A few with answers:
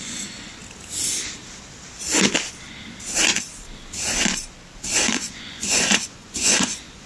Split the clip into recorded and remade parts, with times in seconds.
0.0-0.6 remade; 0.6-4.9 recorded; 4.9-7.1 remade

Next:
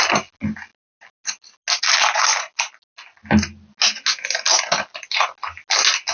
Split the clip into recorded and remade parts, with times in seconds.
0.0-6.1 recorded

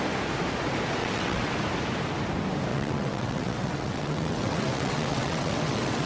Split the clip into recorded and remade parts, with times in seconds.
0.0-1.0 recorded; 1.0-1.5 remade; 1.5-2.7 recorded; 2.7-6.1 remade

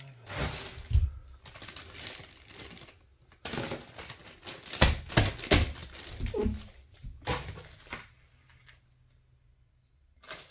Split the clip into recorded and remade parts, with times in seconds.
0.0-10.5 recorded

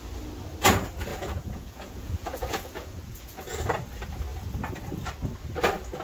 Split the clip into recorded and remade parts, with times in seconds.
0.0-1.1 recorded; 1.1-3.6 remade; 3.6-6.0 recorded

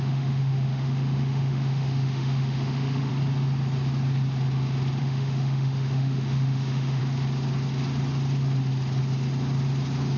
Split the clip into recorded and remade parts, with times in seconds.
0.0-3.1 remade; 3.1-5.0 recorded; 5.0-7.0 remade; 7.0-10.2 recorded

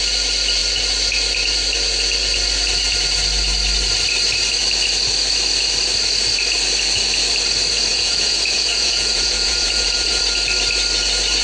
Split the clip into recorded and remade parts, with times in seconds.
0.0-7.9 recorded; 7.9-10.2 remade; 10.2-11.4 recorded

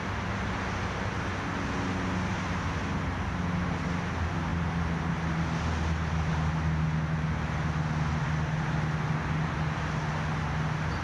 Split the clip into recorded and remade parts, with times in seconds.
0.0-11.0 recorded